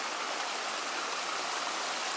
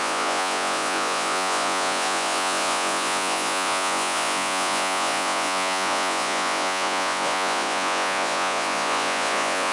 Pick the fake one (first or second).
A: second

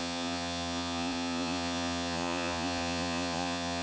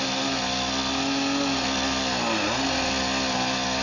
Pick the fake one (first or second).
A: first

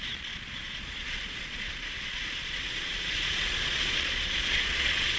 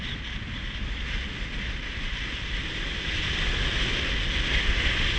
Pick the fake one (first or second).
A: first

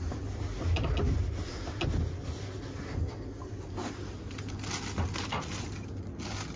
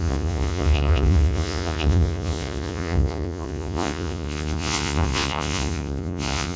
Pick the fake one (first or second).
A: second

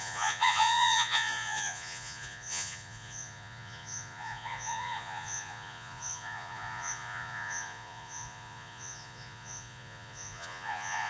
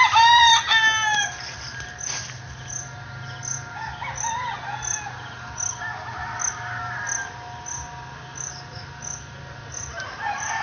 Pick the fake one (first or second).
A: first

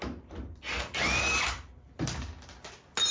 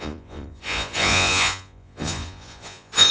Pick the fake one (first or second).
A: second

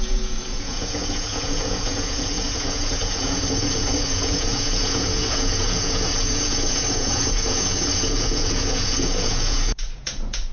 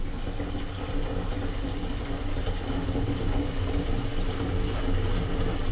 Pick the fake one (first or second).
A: first